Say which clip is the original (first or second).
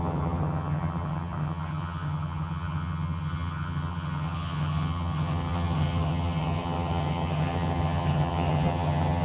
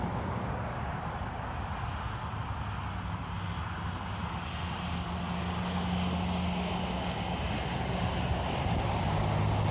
second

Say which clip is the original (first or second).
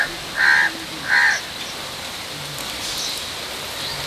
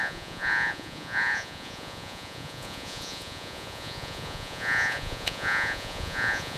first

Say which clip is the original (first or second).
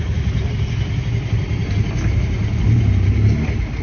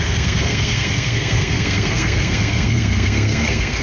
first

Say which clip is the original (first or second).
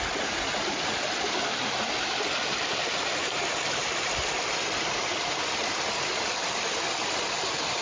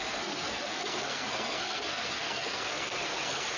first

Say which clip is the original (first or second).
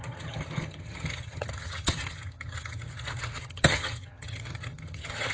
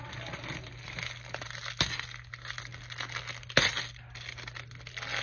second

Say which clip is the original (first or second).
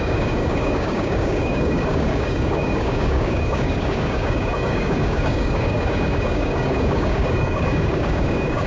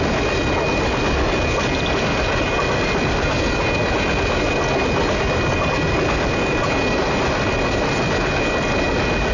second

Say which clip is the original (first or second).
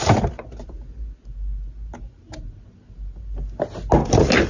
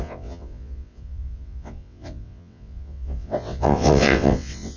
first